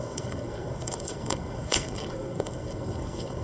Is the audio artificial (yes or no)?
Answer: yes